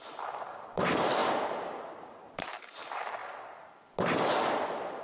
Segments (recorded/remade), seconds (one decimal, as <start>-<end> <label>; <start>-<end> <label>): 0.0-3.2 remade; 3.2-5.0 recorded